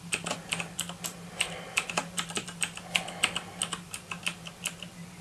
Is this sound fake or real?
real